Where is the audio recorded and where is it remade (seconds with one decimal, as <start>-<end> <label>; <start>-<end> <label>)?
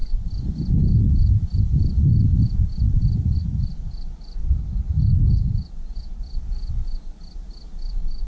0.0-4.4 recorded; 4.4-6.7 remade; 6.7-8.3 recorded